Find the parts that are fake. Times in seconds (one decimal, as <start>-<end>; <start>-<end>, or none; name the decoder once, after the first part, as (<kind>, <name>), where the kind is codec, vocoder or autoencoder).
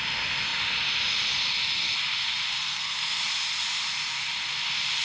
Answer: 2.5-3.2 (codec, SNAC)